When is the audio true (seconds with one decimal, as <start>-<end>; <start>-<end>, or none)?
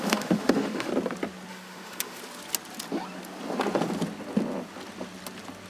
0.9-1.5; 2.2-5.7